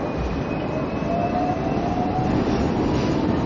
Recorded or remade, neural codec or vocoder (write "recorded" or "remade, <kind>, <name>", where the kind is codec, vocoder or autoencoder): recorded